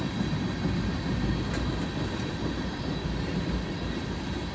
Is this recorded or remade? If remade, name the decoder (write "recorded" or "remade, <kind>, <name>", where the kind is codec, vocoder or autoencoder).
recorded